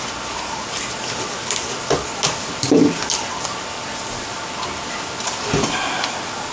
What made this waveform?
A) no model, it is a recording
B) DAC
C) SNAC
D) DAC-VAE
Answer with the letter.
A